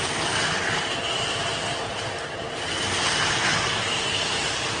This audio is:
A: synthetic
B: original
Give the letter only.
B